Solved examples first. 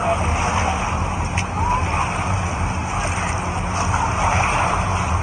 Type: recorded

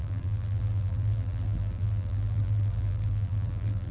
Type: remade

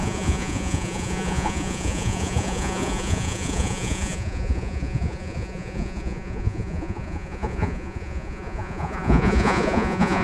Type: remade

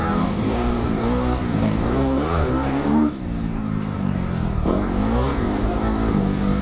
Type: remade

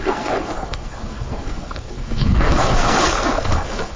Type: remade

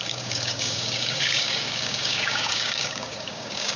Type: remade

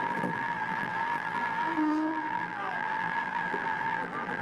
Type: remade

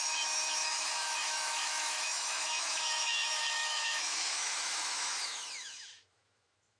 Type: remade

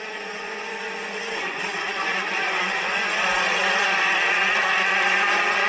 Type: remade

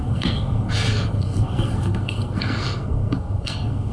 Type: remade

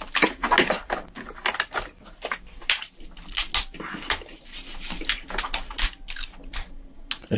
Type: recorded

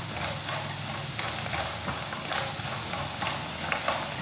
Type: recorded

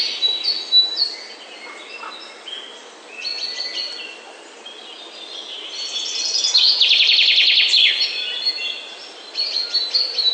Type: recorded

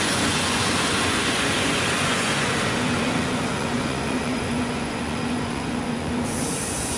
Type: remade